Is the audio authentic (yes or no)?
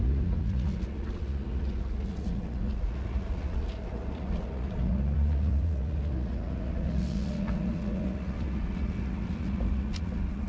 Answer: no